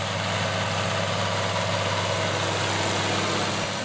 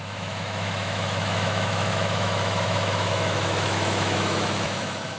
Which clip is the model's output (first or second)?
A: second